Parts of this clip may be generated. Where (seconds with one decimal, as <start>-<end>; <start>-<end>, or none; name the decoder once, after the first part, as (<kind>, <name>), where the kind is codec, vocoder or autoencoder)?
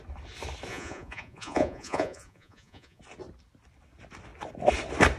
0.7-3.0 (vocoder, Vocos)